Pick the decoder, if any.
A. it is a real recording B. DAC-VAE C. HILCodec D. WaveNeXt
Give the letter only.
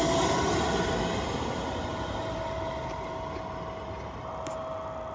A